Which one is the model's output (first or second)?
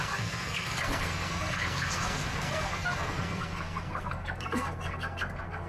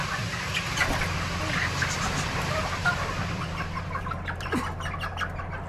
first